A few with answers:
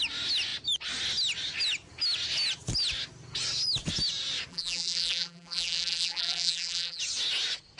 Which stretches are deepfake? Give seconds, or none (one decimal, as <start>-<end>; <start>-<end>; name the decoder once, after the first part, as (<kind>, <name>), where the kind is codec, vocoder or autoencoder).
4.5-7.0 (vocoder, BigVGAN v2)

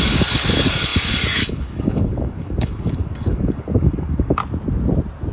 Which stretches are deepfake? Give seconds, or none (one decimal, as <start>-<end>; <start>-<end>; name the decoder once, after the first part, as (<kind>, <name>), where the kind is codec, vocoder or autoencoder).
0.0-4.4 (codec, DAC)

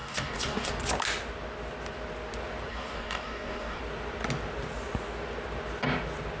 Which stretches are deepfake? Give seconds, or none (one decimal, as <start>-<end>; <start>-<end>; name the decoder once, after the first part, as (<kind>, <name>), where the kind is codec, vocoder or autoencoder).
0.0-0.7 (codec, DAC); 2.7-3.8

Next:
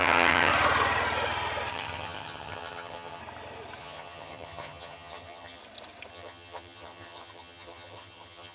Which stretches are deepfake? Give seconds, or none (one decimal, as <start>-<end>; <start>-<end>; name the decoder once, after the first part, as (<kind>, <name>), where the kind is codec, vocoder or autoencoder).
0.0-0.5 (vocoder, HiFi-GAN); 1.7-3.2; 3.8-5.6; 6.1-8.5

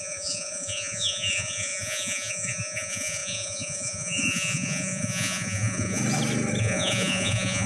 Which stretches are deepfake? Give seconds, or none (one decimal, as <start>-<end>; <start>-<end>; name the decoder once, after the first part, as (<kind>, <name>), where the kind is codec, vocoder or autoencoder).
0.0-6.0 (vocoder, Vocos); 6.6-7.7